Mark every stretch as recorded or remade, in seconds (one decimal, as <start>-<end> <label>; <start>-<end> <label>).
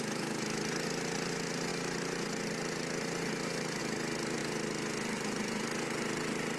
0.0-6.6 recorded